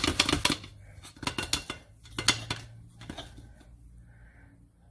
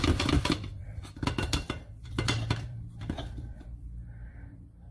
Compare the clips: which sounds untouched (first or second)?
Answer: first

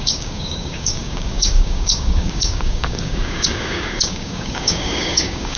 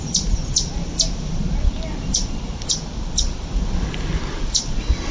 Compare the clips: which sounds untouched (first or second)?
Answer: second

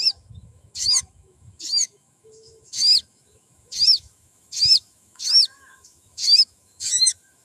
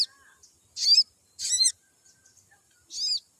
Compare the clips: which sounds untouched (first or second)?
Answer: second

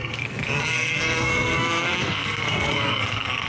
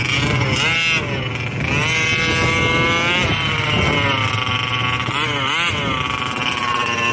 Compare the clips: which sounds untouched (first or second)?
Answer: second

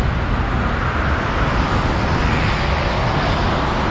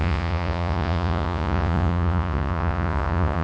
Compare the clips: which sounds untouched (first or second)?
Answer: first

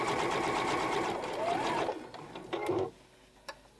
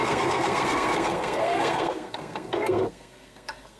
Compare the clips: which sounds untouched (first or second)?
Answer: first